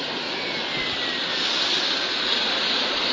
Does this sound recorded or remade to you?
recorded